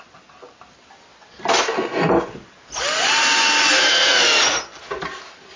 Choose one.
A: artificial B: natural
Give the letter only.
B